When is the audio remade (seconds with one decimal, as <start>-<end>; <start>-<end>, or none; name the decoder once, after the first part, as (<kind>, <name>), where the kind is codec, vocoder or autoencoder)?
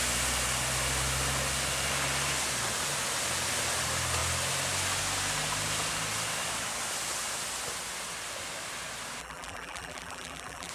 9.2-10.7 (vocoder, BigVGAN v2)